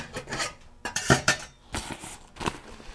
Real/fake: fake